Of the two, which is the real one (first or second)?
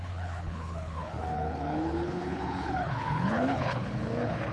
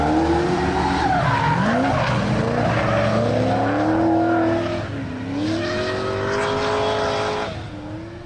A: second